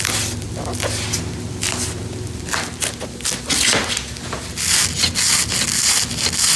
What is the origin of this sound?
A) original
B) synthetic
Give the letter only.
A